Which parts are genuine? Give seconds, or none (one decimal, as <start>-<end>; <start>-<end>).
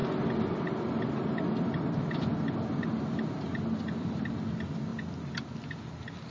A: 0.0-6.3